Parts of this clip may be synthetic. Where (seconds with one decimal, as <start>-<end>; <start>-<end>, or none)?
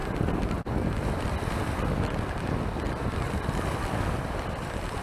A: none